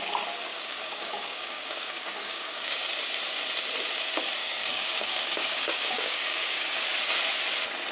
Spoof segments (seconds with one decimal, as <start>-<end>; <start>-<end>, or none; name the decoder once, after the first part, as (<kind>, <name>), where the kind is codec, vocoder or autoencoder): 0.5-2.9 (codec, DAC); 4.4-6.8